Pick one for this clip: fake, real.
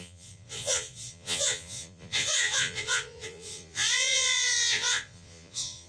fake